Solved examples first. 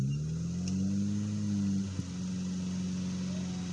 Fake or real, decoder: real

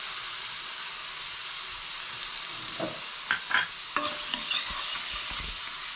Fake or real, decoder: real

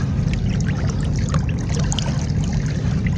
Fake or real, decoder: real